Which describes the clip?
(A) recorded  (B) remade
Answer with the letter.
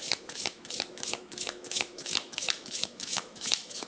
B